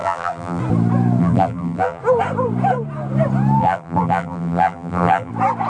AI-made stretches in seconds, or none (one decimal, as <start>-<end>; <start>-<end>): 0.0-0.6; 1.2-2.0; 3.6-5.3